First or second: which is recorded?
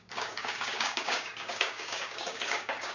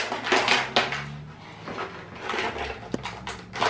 second